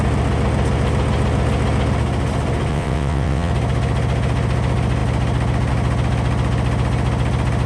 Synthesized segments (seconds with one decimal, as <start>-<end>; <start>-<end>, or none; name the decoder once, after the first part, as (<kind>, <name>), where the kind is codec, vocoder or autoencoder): 2.7-3.5 (vocoder, WaveNeXt)